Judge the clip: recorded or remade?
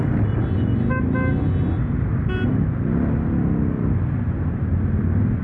recorded